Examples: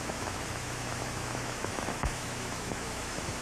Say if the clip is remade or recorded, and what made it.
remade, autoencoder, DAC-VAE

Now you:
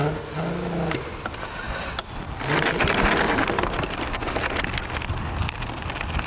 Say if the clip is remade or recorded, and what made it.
recorded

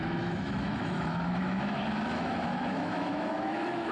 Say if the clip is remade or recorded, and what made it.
remade, autoencoder, DAC-VAE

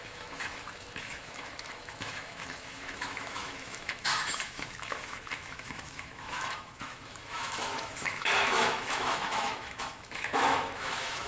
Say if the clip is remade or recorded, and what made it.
remade, autoencoder, DAC-VAE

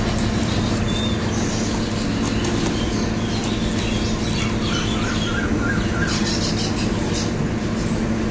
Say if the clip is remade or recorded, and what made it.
recorded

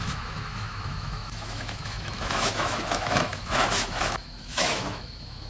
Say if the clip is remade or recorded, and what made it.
remade, autoencoder, DAC-VAE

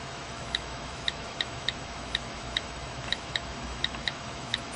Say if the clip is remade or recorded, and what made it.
remade, autoencoder, DAC-VAE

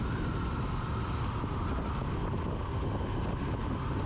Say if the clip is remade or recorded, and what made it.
recorded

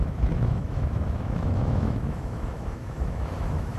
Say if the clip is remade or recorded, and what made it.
remade, autoencoder, DAC-VAE